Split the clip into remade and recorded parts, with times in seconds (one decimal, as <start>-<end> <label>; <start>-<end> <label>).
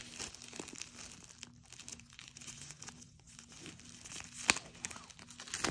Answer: 0.0-1.9 recorded; 1.9-3.7 remade; 3.7-5.7 recorded